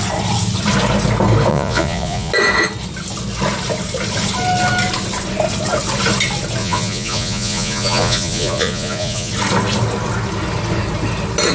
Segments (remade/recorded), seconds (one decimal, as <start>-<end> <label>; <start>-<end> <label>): 0.0-1.5 recorded; 1.5-2.3 remade; 2.3-6.6 recorded; 6.6-9.3 remade; 9.3-11.5 recorded